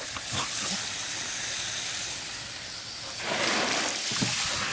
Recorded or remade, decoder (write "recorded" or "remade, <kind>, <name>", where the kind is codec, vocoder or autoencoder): recorded